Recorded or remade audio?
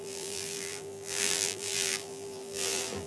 remade